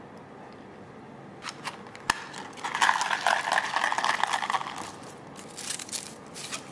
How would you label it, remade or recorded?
recorded